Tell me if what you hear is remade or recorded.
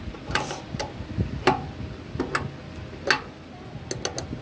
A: recorded